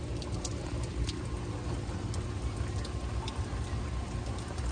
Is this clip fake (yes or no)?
no